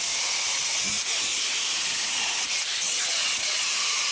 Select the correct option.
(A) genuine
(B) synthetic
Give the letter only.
B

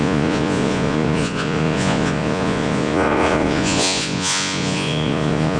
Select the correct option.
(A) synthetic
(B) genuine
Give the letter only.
A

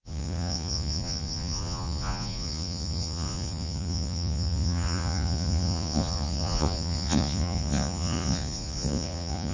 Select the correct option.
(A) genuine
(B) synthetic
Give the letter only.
B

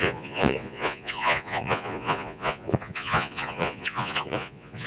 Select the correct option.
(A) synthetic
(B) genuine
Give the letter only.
A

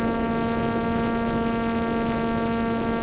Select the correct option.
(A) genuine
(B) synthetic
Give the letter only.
A